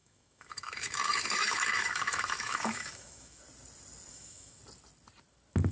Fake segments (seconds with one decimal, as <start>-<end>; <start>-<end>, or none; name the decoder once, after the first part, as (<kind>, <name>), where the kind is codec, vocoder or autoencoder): 0.0-3.4 (autoencoder, DAC-VAE); 4.1-4.6